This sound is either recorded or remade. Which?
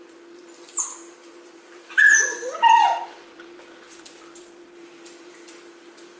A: remade